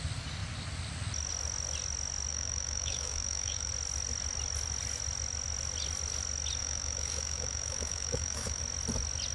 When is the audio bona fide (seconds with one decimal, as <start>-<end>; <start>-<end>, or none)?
0.0-2.3; 3.7-6.6; 8.6-9.3